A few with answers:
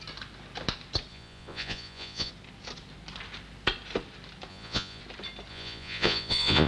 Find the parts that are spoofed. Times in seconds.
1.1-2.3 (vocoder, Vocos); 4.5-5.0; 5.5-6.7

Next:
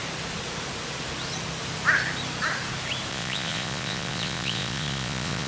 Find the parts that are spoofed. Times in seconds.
3.1-5.5 (vocoder, Vocos)

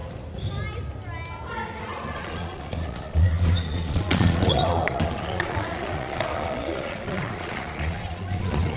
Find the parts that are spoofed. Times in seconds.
1.8-8.8 (vocoder, Vocos)